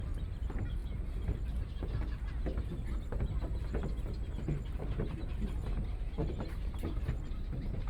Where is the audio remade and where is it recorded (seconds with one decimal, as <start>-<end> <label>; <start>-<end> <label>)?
0.0-5.2 recorded; 5.2-6.6 remade; 6.6-7.9 recorded